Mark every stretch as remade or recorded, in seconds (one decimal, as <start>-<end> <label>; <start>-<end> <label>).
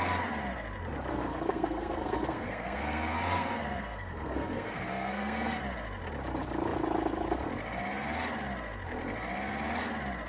0.0-1.1 recorded; 1.1-5.6 remade; 5.6-10.3 recorded